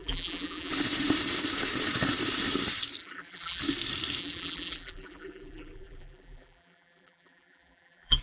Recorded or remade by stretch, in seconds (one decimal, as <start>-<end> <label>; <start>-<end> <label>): 0.0-0.7 remade; 0.7-3.0 recorded; 3.0-3.6 remade; 3.6-4.2 recorded; 4.2-8.2 remade